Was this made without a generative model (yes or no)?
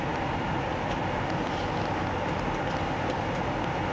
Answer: yes